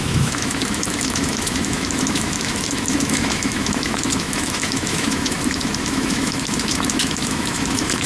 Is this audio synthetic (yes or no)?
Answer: yes